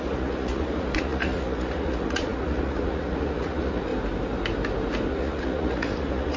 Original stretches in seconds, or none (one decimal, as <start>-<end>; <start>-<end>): 3.9-5.1